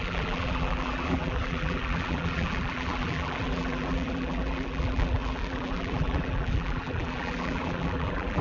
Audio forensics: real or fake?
fake